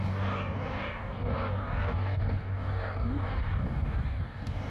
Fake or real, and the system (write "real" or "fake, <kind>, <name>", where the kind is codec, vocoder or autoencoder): fake, codec, DAC